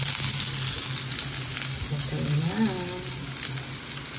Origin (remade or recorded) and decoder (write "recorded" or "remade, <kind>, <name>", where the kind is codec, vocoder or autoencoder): recorded